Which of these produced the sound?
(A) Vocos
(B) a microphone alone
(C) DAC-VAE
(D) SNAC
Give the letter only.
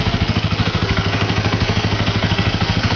D